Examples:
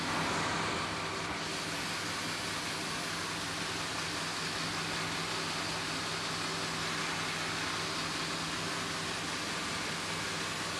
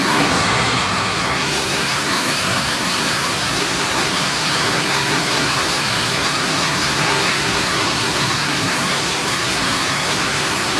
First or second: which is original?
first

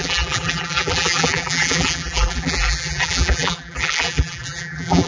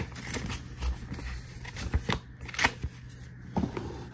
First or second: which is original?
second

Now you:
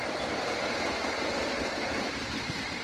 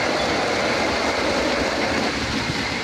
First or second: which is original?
second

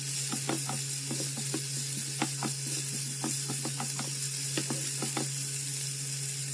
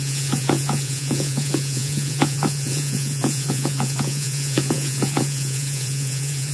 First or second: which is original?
first